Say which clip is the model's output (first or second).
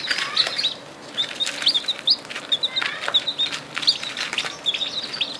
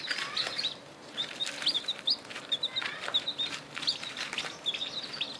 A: second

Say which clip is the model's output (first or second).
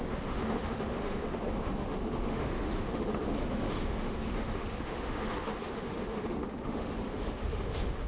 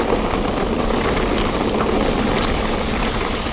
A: first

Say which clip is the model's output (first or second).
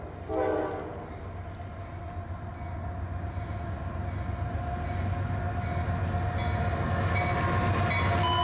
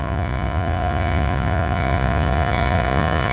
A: second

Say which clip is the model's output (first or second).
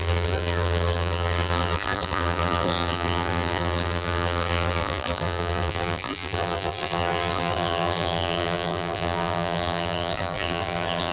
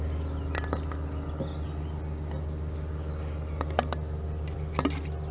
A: first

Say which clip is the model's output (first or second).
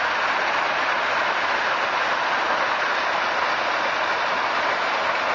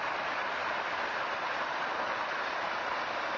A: second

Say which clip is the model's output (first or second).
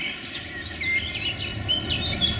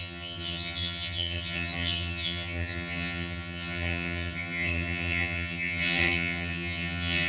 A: second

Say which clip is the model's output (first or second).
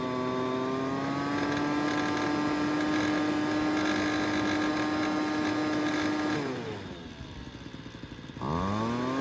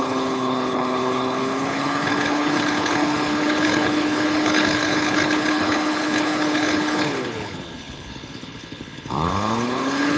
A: second